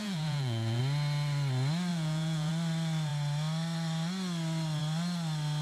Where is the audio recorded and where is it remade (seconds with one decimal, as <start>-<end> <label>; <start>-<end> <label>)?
0.0-0.8 remade; 0.8-1.9 recorded; 1.9-2.5 remade; 2.5-5.6 recorded